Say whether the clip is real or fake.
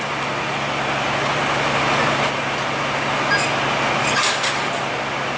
real